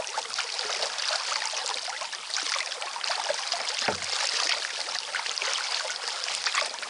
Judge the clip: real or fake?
real